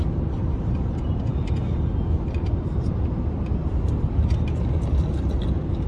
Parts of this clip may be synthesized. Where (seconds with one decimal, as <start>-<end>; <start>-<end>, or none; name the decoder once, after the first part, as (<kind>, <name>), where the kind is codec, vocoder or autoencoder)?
none